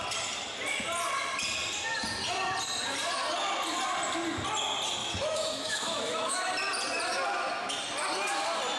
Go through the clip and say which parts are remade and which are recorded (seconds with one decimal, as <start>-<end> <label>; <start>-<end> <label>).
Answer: 0.0-5.0 recorded; 5.0-6.5 remade; 6.5-8.8 recorded